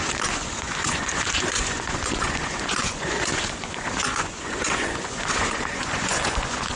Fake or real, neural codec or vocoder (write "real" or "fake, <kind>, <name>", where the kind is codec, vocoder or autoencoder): fake, vocoder, Vocos